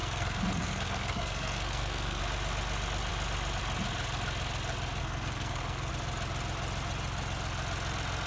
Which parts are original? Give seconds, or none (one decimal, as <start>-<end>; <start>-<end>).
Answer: 2.2-5.0; 5.9-8.3